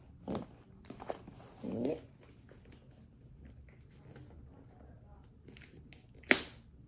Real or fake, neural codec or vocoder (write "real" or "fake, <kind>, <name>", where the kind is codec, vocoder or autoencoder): real